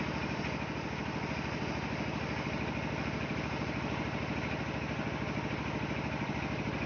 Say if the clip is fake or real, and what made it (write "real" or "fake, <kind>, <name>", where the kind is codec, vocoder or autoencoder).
real